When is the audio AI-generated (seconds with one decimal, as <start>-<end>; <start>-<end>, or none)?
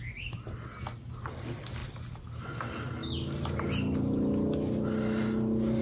none